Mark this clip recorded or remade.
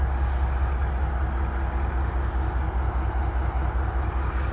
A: recorded